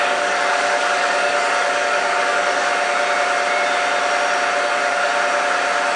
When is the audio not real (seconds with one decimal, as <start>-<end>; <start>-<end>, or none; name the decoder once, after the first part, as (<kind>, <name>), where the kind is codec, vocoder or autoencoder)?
0.0-2.7 (codec, DAC); 4.6-5.1